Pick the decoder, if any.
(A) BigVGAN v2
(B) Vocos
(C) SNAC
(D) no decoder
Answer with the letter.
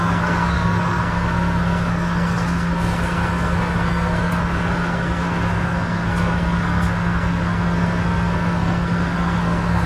C